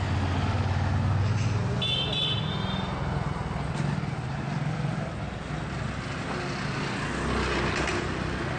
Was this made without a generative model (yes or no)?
yes